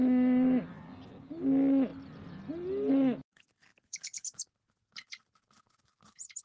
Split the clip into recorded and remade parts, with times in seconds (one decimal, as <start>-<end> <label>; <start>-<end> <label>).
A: 0.0-3.7 recorded; 3.7-6.4 remade